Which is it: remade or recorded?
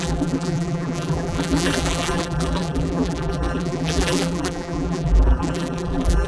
remade